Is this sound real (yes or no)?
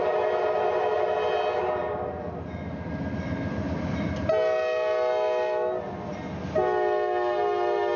yes